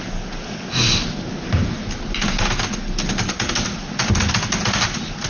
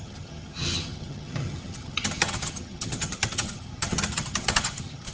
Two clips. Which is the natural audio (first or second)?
first